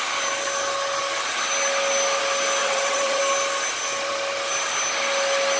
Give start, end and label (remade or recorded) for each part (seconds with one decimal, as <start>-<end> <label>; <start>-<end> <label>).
0.0-2.6 recorded; 2.6-3.2 remade; 3.2-5.6 recorded